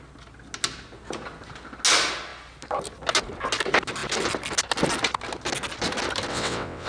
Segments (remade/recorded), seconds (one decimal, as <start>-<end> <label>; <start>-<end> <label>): 0.0-6.3 recorded; 6.3-6.9 remade